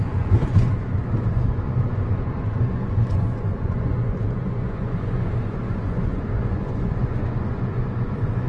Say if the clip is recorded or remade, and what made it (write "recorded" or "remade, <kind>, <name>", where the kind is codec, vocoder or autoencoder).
remade, vocoder, Vocos